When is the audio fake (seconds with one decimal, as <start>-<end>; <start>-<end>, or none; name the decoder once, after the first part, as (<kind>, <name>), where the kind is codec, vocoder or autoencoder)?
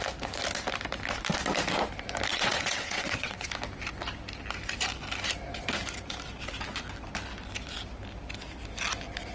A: 2.3-3.5 (vocoder, WaveNeXt)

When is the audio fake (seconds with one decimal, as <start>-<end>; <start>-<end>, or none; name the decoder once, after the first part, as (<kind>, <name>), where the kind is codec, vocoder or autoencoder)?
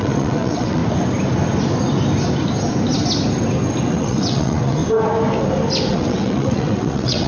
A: 0.0-0.8 (vocoder, WaveNeXt); 3.9-4.8; 5.9-7.3